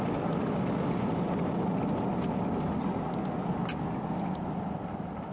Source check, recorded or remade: recorded